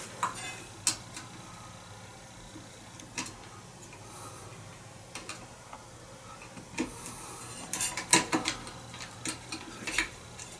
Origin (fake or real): real